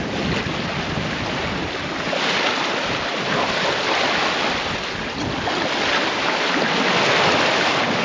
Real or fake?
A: real